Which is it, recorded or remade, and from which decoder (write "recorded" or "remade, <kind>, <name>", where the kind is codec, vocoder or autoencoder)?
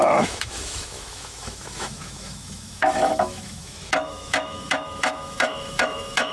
remade, autoencoder, DAC-VAE